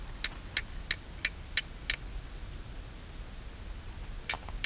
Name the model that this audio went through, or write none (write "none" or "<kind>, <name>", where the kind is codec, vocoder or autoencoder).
none